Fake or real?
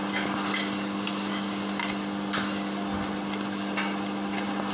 real